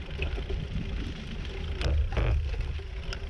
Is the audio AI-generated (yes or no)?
no